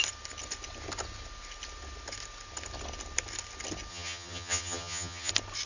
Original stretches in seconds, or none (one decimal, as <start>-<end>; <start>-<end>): 0.0-3.9; 5.3-5.7